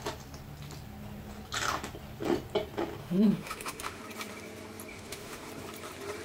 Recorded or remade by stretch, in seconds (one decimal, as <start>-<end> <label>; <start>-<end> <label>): 0.0-3.0 recorded; 3.0-4.0 remade; 4.0-4.9 recorded; 4.9-5.5 remade; 5.5-6.2 recorded